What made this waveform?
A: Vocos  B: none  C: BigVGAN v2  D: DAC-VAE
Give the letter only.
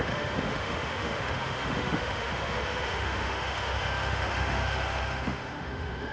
D